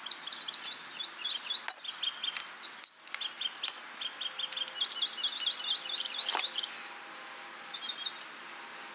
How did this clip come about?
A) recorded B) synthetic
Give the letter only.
A